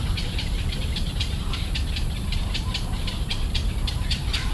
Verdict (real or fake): fake